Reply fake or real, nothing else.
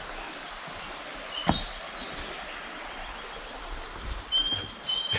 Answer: real